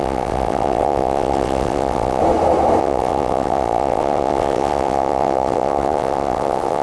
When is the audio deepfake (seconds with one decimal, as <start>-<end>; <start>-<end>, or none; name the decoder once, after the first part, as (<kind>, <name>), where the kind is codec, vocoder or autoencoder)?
0.0-2.2 (vocoder, WaveNeXt); 2.8-6.8